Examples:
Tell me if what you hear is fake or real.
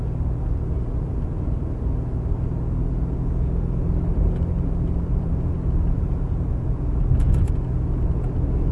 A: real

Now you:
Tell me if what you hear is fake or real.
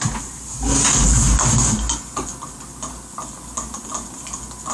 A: real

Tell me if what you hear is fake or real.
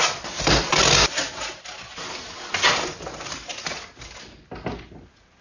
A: real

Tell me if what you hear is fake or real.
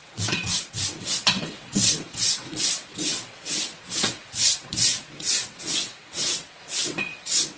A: fake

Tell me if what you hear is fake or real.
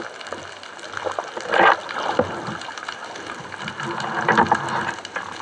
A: real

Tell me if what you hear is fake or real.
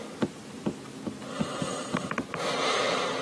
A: real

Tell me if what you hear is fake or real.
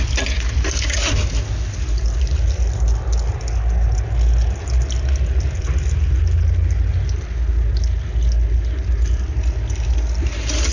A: real